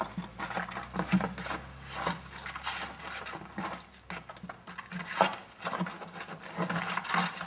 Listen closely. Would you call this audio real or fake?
real